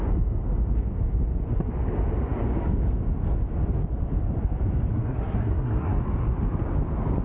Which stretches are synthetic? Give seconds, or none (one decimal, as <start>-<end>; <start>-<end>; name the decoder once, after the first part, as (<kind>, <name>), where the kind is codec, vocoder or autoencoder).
4.9-6.0 (codec, SNAC)